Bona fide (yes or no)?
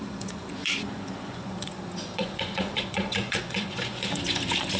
no